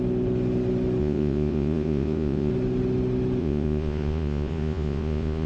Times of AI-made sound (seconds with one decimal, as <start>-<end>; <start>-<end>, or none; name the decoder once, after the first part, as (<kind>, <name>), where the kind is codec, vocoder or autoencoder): 1.0-2.5 (vocoder, Vocos); 3.4-5.5